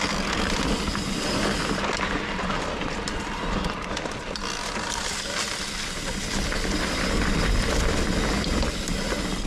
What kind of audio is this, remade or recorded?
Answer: recorded